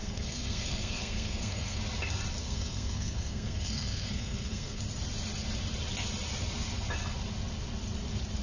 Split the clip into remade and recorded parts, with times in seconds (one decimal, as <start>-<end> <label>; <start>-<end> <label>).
0.0-1.8 remade; 1.8-2.4 recorded; 2.4-4.8 remade; 4.8-8.4 recorded